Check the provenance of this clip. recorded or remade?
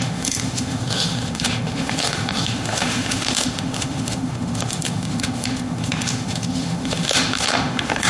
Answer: remade